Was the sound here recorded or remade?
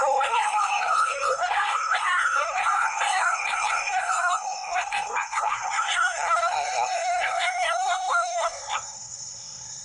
remade